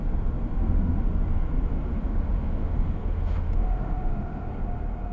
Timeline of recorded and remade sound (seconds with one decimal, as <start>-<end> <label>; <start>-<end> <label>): 0.0-1.7 recorded; 1.7-4.5 remade; 4.5-5.1 recorded